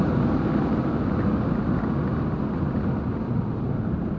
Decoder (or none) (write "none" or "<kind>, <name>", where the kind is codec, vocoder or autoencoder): none